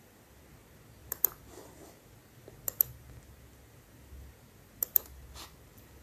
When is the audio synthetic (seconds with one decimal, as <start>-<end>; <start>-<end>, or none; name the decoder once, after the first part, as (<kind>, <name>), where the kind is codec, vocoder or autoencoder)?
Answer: none